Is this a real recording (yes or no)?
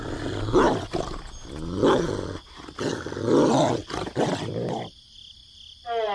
yes